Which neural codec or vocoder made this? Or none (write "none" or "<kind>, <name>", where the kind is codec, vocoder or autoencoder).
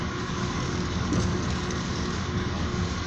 codec, DAC